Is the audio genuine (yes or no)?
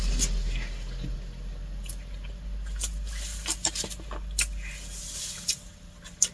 yes